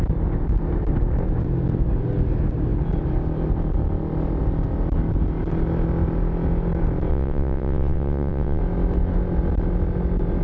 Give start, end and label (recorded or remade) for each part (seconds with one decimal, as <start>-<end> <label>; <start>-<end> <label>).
0.0-7.1 recorded; 7.1-8.6 remade; 8.6-10.4 recorded